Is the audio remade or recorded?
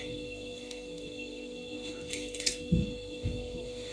remade